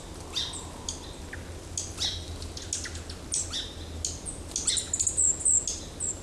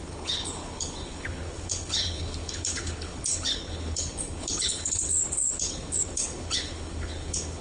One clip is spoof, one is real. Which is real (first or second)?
first